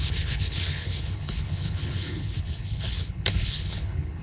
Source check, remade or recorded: remade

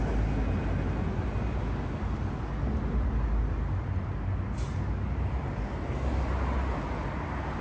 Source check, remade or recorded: recorded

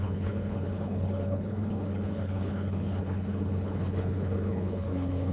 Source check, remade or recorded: remade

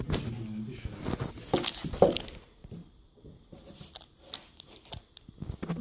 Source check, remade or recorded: recorded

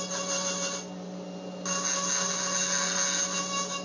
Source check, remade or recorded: recorded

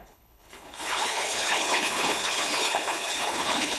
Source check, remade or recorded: remade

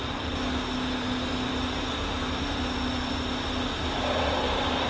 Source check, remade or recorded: recorded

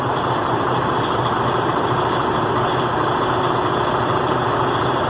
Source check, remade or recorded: recorded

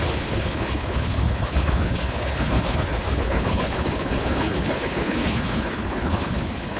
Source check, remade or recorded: remade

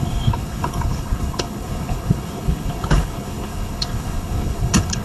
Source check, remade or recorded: remade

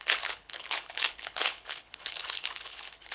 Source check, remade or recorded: remade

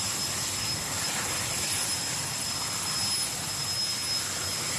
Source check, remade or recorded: recorded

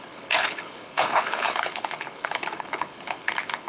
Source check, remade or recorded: remade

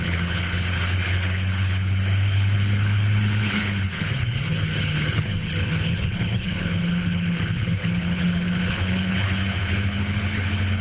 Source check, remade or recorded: remade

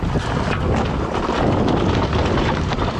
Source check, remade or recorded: recorded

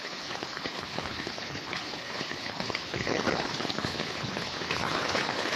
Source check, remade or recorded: remade